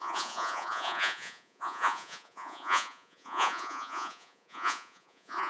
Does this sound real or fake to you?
fake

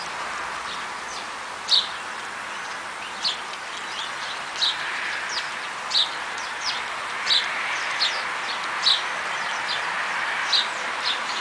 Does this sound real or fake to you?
real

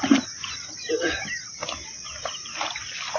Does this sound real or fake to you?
real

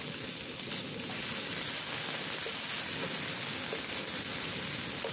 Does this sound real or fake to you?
real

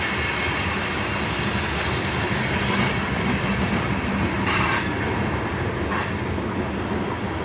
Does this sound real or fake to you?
real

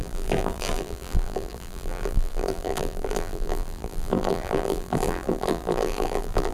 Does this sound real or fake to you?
fake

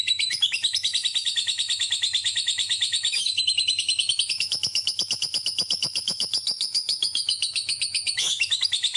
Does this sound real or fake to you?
fake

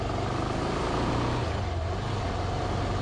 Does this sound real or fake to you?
real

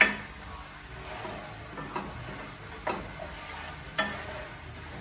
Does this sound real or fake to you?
real